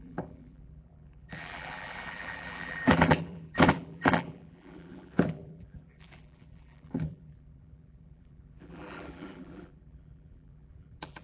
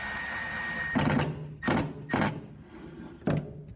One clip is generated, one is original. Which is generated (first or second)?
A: first